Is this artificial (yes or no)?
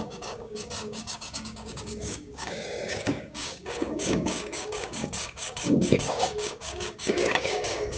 yes